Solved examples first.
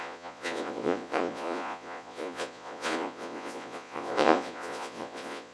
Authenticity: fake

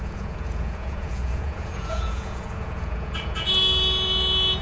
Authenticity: fake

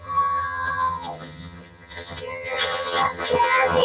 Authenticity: fake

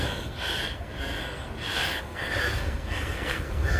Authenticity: fake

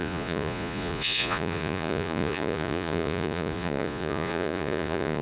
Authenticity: fake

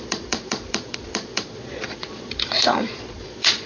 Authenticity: fake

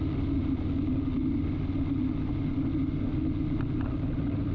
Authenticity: real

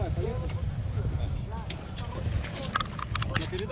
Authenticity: real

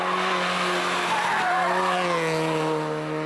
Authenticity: real